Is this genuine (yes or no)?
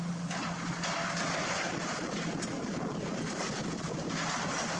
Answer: yes